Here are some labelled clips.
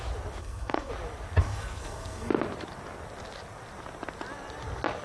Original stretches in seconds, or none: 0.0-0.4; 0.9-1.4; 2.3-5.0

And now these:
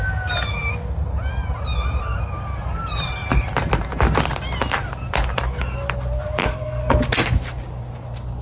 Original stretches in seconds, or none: 0.0-6.4; 7.0-8.4

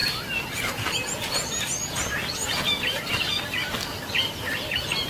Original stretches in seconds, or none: 0.0-5.1

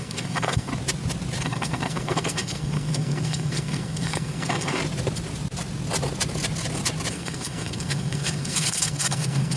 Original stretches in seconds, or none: 0.7-1.4; 4.8-7.1

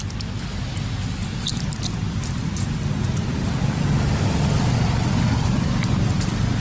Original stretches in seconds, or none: 0.0-6.6